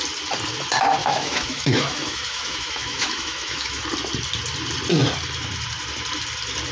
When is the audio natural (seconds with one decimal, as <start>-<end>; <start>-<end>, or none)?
0.0-1.0; 3.8-6.7